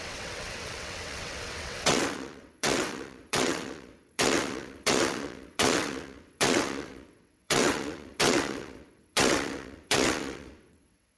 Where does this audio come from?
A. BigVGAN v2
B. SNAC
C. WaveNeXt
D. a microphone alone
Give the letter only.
C